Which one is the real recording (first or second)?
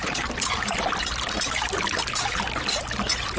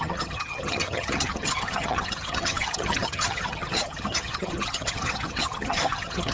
first